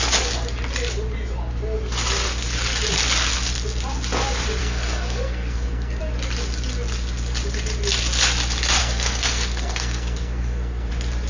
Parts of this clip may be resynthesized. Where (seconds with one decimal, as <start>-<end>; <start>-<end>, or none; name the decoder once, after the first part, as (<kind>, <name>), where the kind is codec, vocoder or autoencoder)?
4.6-6.0 (codec, SNAC); 8.8-10.9

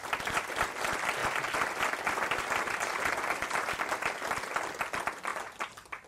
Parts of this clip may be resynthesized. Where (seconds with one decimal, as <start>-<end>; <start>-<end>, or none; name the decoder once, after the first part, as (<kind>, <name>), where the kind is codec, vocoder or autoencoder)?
5.3-6.1 (vocoder, BigVGAN v2)

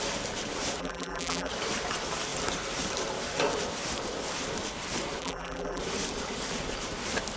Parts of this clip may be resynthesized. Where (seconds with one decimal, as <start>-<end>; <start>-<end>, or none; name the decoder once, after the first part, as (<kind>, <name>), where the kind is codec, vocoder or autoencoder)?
0.8-1.5 (vocoder, BigVGAN v2); 5.2-5.8

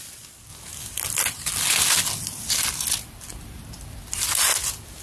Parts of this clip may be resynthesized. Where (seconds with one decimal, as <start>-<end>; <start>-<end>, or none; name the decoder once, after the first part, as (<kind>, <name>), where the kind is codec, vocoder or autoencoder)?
none

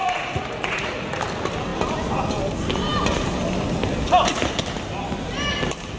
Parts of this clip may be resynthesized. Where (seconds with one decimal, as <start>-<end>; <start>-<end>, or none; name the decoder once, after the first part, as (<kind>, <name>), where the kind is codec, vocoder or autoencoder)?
0.0-1.2 (vocoder, Vocos)